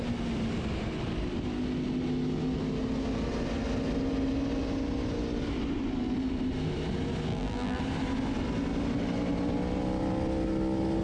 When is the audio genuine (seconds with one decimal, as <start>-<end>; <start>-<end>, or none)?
0.0-7.3; 7.8-11.0